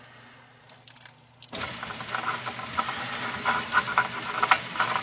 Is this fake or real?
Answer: real